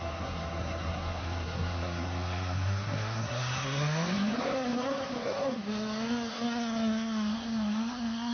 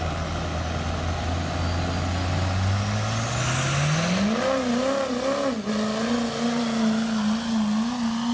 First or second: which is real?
second